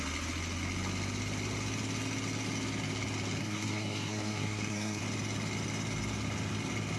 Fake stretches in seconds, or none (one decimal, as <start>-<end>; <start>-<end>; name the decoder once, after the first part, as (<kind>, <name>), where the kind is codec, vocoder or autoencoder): 3.4-5.0 (codec, SNAC)